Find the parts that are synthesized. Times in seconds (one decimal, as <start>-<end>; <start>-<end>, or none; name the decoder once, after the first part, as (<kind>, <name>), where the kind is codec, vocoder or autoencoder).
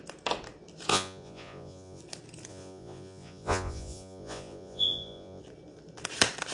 0.9-2.0 (vocoder, Vocos); 2.5-5.4